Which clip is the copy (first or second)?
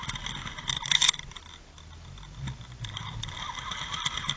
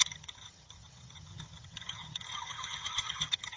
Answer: second